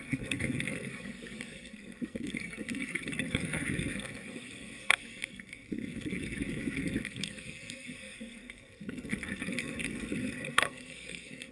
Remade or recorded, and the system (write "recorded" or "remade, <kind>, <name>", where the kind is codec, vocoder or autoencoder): remade, codec, SNAC